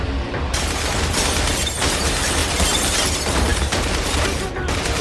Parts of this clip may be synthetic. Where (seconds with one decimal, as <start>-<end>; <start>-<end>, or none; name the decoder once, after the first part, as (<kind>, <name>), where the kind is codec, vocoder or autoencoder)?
0.0-5.0 (vocoder, BigVGAN v2)